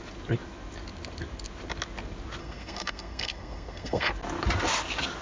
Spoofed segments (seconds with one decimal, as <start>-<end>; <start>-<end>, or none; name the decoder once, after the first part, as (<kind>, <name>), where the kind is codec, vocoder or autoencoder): 2.4-4.1 (codec, SNAC)